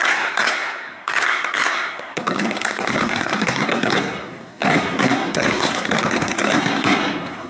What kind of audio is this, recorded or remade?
remade